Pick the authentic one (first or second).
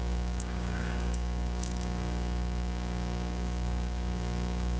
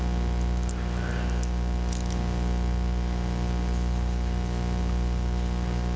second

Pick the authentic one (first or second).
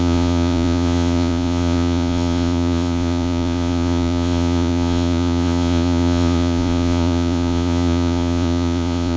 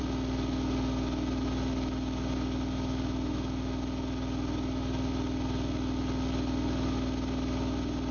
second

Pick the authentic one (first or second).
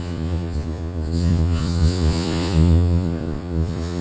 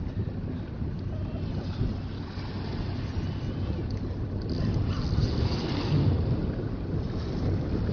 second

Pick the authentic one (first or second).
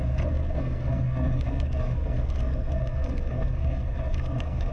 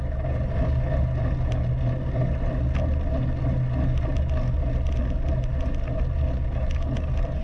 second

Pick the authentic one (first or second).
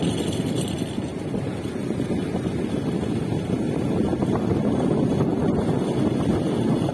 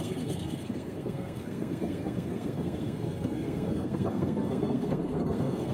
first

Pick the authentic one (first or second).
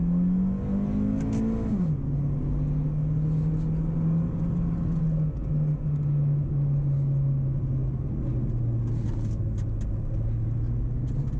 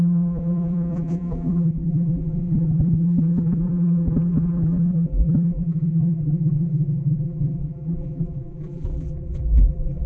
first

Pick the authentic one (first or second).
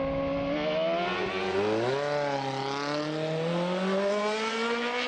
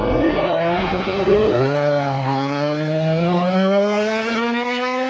first